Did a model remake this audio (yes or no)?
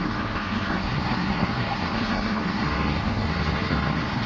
yes